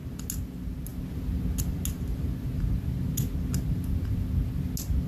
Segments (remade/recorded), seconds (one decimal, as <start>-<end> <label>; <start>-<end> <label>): 0.0-5.1 recorded